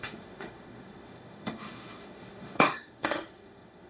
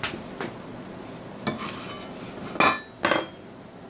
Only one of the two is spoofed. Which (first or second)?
first